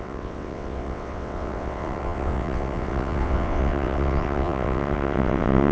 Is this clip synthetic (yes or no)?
yes